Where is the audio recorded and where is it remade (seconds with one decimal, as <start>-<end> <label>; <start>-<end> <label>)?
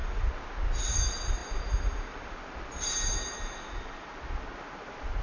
0.0-5.2 recorded